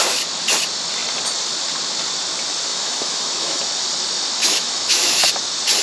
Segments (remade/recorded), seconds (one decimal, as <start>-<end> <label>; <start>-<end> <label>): 0.0-2.7 recorded; 2.7-3.6 remade; 3.6-4.4 recorded; 4.4-5.3 remade; 5.3-5.8 recorded